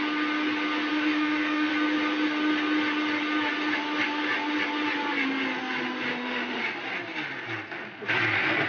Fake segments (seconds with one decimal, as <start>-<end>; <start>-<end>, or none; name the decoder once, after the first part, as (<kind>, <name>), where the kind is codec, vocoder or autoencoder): 0.9-1.7 (autoencoder, DAC-VAE); 6.1-6.6